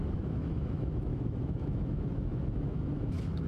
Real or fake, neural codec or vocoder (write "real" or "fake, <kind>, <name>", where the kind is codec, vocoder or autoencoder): fake, autoencoder, DAC-VAE